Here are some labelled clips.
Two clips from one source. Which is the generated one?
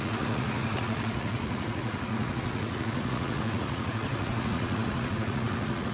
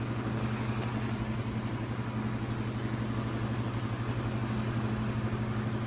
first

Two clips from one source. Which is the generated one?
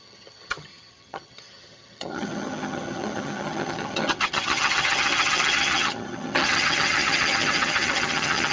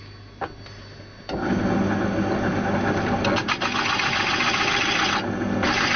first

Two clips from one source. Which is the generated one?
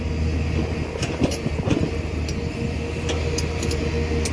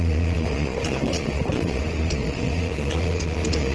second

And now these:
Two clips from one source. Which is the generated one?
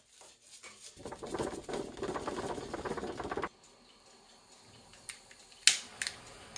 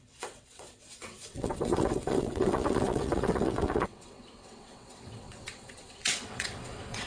second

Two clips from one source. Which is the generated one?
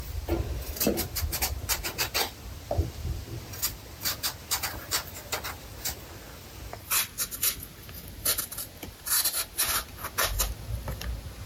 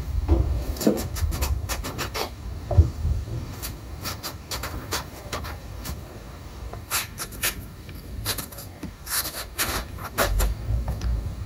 second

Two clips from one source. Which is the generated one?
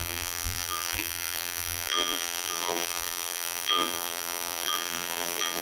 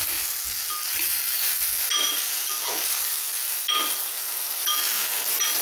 first